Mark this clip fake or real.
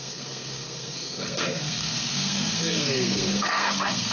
fake